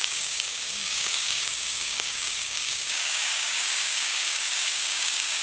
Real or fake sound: fake